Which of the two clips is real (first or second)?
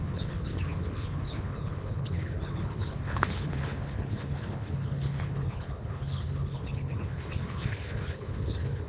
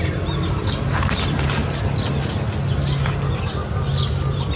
second